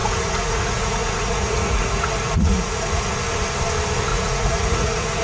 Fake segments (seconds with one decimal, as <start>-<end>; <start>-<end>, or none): 0.0-3.1; 4.1-5.2